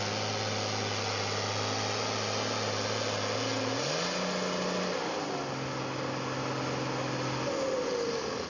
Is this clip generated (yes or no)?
no